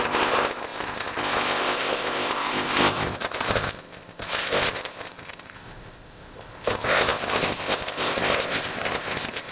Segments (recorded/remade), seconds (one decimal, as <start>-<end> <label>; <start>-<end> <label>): 0.0-9.5 remade